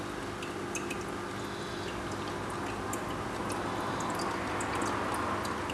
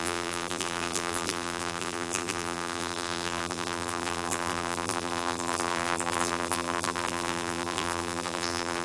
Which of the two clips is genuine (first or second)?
first